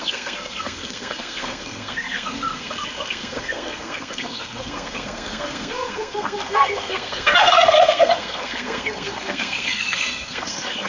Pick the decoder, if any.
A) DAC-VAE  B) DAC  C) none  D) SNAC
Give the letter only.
D